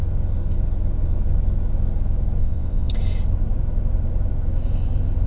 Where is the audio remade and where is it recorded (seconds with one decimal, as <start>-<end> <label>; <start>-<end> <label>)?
0.0-2.4 recorded; 2.4-2.9 remade; 2.9-5.3 recorded